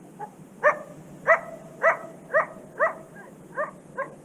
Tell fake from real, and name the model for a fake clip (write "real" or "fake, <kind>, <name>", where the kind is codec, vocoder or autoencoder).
real